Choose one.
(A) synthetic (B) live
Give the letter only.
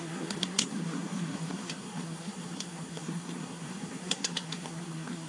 A